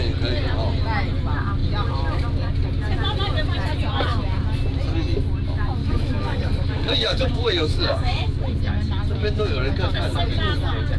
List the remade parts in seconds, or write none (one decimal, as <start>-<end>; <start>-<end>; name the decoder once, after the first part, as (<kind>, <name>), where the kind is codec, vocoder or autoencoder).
5.8-8.4 (codec, DAC); 9.2-9.7